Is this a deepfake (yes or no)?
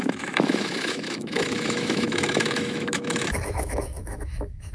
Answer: yes